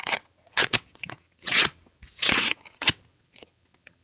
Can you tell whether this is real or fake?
fake